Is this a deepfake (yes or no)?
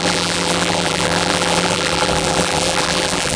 yes